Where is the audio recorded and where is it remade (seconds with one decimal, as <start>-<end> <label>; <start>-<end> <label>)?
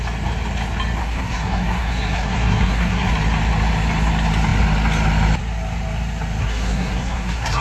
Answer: 0.0-1.0 recorded; 1.0-3.1 remade; 3.1-6.4 recorded; 6.4-7.6 remade